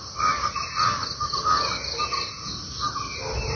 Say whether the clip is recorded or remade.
recorded